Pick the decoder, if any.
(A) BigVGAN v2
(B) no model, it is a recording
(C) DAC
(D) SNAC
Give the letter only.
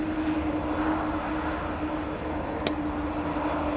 B